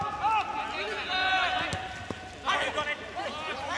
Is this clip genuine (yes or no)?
yes